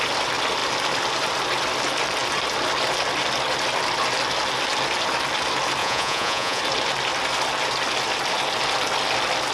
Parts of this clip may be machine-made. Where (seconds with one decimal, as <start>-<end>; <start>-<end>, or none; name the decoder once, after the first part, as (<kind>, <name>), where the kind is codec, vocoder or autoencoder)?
5.8-6.6 (vocoder, Vocos)